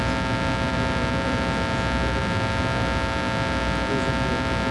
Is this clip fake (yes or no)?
no